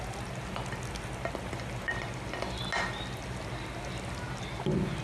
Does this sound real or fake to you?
real